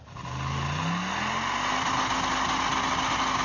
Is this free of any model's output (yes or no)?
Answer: yes